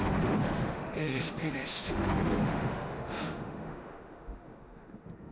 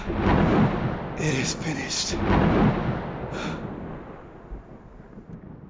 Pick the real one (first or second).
second